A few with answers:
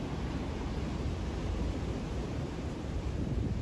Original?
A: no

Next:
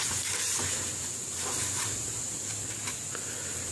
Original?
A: yes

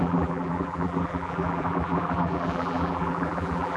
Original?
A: no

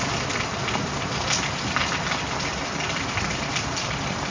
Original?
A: yes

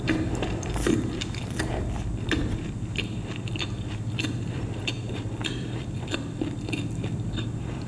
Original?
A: no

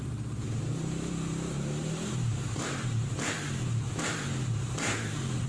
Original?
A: no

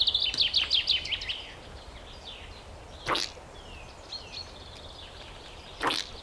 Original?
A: yes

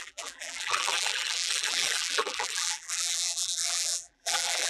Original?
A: no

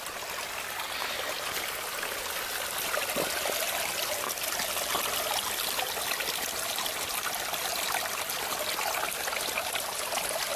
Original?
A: yes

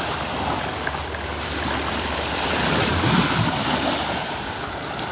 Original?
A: no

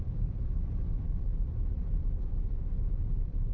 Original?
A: no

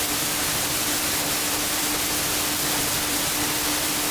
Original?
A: no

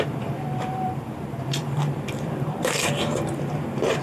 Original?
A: no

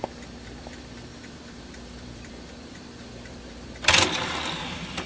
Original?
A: no